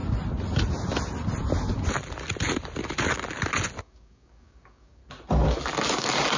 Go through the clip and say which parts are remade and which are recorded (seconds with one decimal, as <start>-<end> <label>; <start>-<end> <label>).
0.0-3.8 recorded; 3.8-5.0 remade; 5.0-6.4 recorded

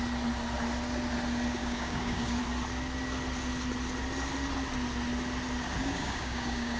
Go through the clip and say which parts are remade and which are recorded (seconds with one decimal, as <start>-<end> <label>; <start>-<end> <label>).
0.0-1.6 recorded; 1.6-2.4 remade; 2.4-5.8 recorded; 5.8-6.8 remade

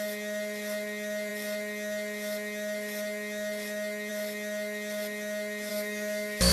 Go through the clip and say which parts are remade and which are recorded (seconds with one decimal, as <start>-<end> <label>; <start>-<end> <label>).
0.0-5.7 recorded; 5.7-6.5 remade

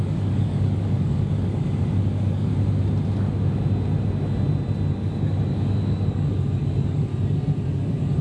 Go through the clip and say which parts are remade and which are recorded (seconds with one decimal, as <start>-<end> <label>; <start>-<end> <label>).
0.0-2.5 remade; 2.5-4.9 recorded; 4.9-7.1 remade; 7.1-7.7 recorded; 7.7-8.2 remade

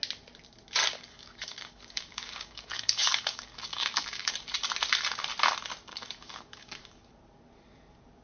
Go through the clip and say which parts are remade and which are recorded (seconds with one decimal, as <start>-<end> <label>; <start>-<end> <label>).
0.0-0.8 recorded; 0.8-4.3 remade; 4.3-5.9 recorded; 5.9-7.1 remade; 7.1-8.2 recorded

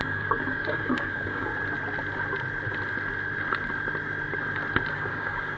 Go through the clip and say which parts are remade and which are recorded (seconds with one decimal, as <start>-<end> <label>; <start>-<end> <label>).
0.0-1.5 remade; 1.5-4.9 recorded; 4.9-5.6 remade